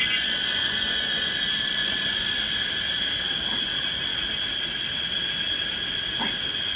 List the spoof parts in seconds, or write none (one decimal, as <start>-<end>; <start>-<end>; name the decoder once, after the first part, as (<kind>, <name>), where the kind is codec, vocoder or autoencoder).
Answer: 0.0-1.4 (vocoder, Vocos); 1.8-2.4